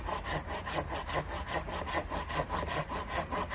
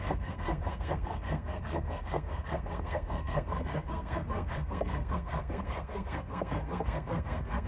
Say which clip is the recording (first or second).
first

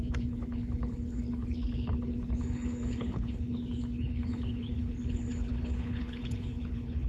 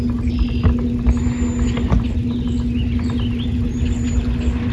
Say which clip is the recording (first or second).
second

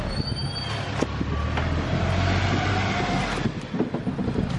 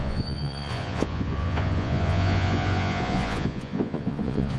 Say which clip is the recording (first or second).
first